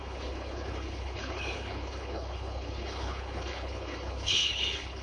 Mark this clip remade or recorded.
remade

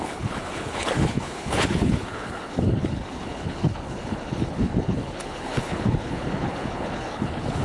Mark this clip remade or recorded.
remade